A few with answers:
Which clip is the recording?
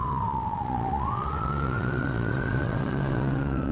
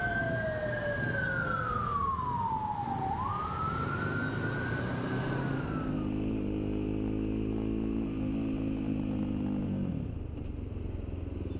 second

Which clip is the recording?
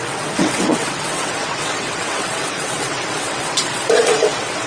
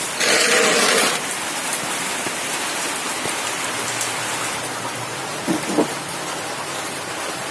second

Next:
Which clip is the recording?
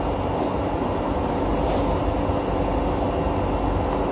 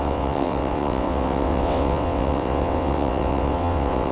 first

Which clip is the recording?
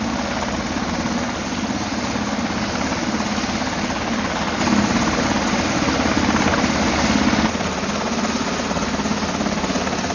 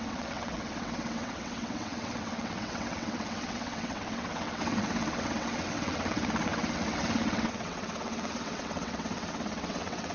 first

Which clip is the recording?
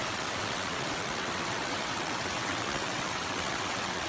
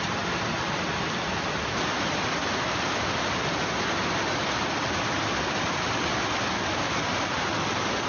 second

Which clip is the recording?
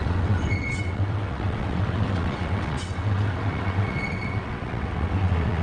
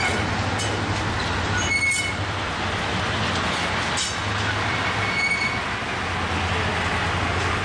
second